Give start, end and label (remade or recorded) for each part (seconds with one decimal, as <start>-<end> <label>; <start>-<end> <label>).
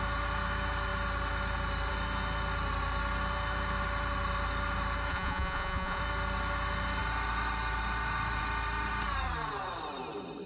0.0-5.1 recorded; 5.1-6.0 remade; 6.0-10.5 recorded